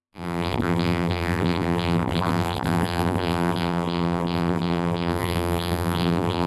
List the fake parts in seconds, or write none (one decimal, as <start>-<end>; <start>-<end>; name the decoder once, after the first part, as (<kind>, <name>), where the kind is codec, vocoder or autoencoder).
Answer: 0.0-6.5 (vocoder, BigVGAN v2)